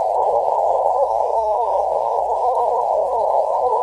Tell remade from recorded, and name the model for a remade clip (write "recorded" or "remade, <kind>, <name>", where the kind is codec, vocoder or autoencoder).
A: remade, codec, SNAC